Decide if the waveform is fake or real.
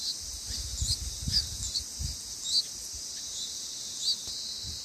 real